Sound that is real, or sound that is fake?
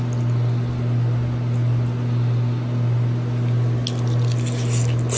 real